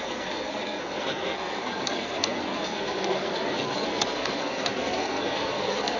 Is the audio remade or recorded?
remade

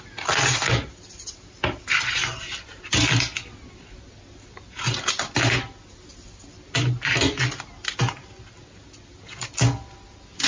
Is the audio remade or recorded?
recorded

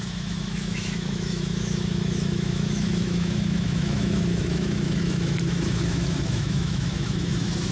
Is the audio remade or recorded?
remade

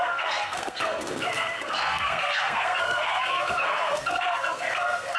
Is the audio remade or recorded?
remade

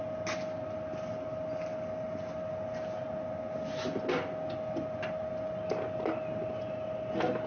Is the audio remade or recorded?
recorded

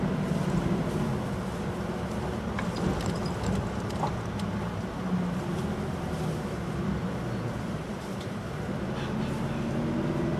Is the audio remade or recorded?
recorded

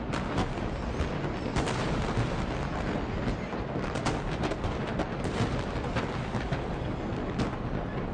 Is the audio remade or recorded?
recorded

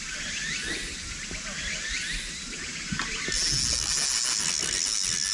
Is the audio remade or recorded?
recorded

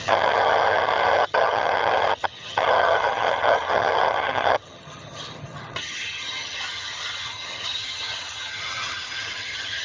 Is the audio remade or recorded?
remade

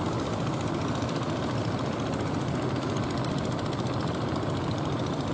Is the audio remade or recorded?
recorded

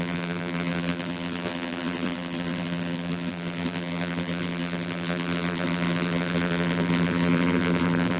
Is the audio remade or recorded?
remade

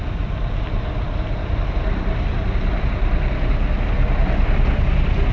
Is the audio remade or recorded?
recorded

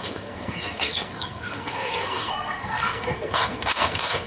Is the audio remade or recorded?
remade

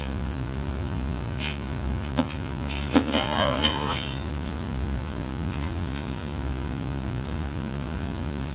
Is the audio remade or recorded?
remade